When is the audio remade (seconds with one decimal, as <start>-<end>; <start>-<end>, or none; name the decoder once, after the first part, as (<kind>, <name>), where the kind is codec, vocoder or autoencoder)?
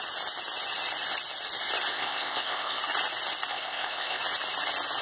1.9-2.8 (codec, ZipCodec); 3.5-4.2